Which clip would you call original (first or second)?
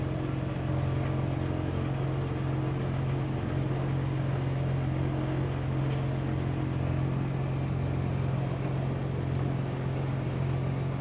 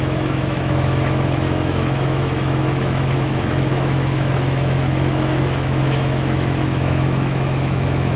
first